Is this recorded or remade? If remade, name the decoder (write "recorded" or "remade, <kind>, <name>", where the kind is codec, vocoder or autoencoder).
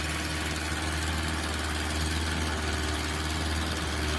recorded